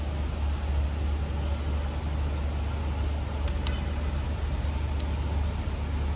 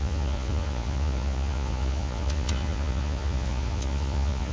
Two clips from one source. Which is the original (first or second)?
first